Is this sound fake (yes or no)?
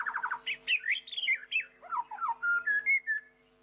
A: no